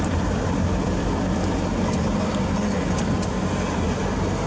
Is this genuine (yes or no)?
yes